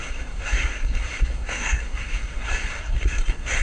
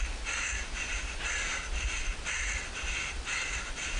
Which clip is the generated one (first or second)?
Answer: first